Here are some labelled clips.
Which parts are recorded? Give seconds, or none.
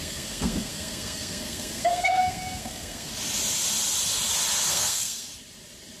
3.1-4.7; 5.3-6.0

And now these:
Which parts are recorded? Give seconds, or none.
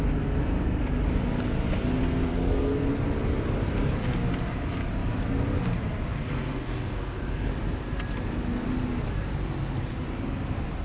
0.0-2.3; 2.9-6.1; 7.5-10.8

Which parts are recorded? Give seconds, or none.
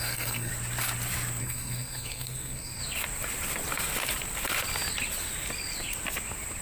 0.5-1.4; 2.8-6.6